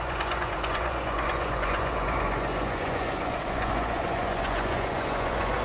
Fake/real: fake